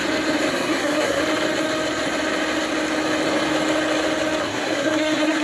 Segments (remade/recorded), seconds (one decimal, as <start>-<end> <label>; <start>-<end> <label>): 0.0-0.5 recorded; 0.5-1.2 remade; 1.2-4.4 recorded; 4.4-5.4 remade